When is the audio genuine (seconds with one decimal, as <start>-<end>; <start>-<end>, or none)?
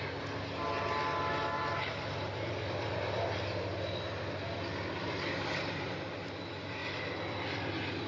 0.0-8.1